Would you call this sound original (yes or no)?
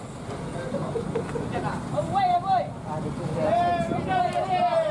yes